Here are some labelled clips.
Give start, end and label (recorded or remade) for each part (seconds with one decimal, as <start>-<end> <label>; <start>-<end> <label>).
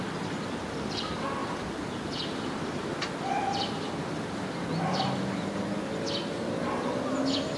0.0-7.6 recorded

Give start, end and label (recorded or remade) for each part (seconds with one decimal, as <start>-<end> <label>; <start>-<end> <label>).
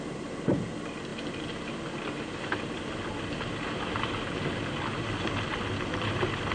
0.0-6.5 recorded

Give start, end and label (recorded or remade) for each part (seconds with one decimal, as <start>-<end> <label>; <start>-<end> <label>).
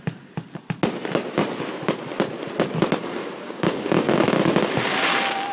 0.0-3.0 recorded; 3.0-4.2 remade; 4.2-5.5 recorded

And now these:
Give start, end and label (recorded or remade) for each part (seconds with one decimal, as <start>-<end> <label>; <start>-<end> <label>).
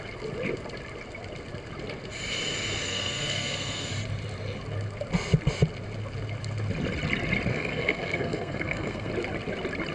0.0-2.8 recorded; 2.8-3.9 remade; 3.9-7.5 recorded; 7.5-9.1 remade; 9.1-9.9 recorded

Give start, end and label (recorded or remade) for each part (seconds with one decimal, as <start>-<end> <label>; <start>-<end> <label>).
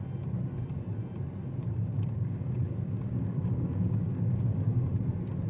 0.0-1.6 recorded; 1.6-4.9 remade; 4.9-5.5 recorded